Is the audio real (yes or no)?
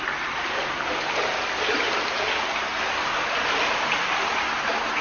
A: yes